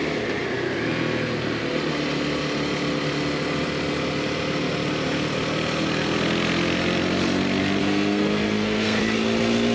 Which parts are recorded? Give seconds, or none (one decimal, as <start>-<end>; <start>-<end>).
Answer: 0.0-7.8; 9.0-9.7